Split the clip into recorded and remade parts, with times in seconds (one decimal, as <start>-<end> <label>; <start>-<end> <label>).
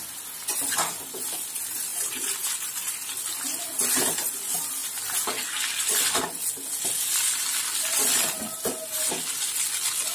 0.0-1.9 recorded; 1.9-2.9 remade; 2.9-10.1 recorded